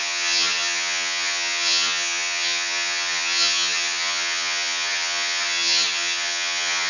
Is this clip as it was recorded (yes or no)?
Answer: no